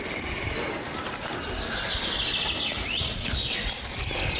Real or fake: real